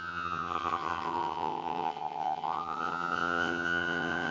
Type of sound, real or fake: fake